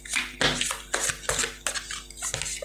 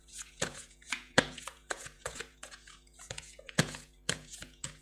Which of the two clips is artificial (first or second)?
second